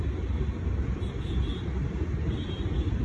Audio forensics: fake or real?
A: real